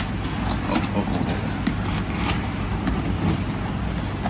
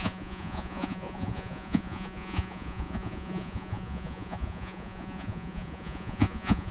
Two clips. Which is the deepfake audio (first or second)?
second